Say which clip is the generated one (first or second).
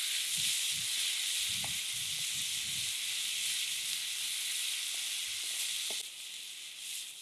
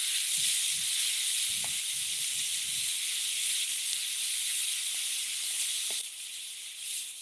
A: second